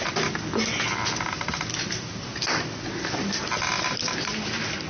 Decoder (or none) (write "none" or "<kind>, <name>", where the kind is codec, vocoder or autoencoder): none